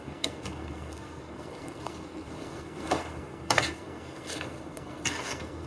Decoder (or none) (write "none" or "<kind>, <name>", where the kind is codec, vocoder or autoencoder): codec, SNAC